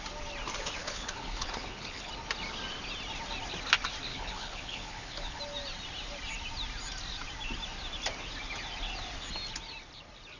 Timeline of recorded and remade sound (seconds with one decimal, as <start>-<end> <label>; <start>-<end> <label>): 0.0-0.8 recorded; 0.8-2.1 remade; 2.1-4.1 recorded; 4.1-5.4 remade; 5.4-10.4 recorded